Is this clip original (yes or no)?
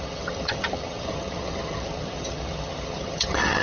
no